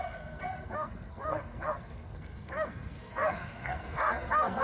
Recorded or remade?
remade